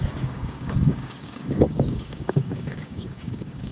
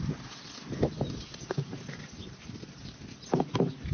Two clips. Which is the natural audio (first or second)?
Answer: second